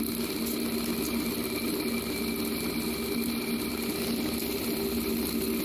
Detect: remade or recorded recorded